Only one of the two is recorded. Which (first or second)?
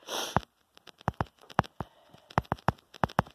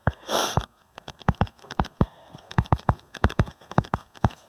first